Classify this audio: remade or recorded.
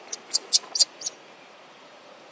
remade